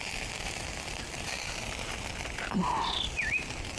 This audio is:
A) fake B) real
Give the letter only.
B